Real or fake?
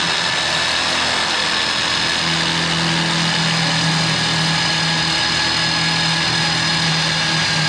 real